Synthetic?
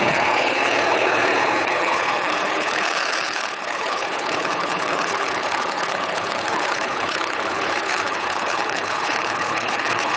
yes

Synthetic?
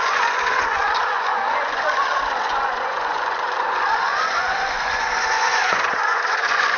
yes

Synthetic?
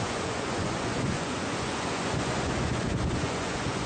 yes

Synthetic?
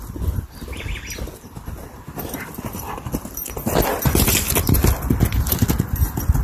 no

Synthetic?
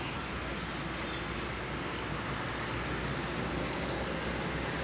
no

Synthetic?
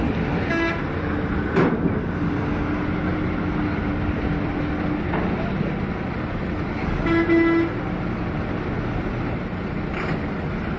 no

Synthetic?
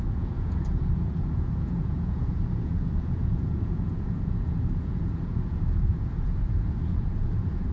yes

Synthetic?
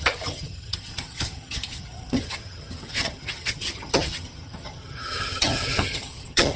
yes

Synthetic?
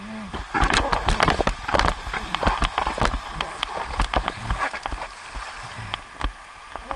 no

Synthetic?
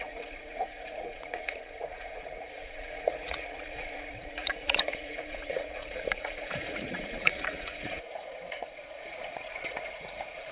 yes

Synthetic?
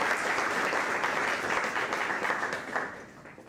no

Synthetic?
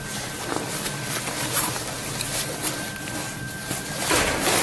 no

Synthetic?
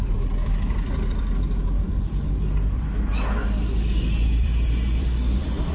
yes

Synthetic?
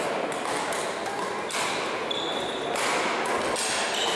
no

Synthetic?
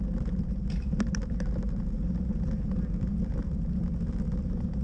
no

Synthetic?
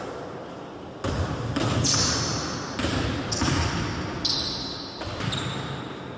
no